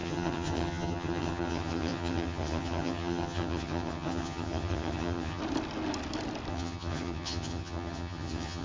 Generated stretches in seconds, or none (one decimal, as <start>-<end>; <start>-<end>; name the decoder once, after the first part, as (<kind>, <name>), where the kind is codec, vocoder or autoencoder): 0.0-5.4 (vocoder, HiFi-GAN); 6.5-8.6